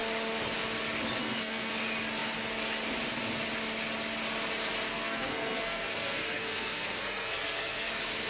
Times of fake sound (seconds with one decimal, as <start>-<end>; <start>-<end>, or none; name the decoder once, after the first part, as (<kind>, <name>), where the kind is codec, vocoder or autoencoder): 1.2-1.7 (codec, SNAC); 4.9-7.9